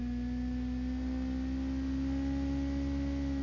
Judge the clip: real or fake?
real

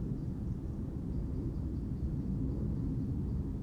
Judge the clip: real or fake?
fake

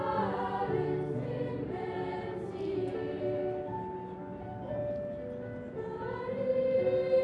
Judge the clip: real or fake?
real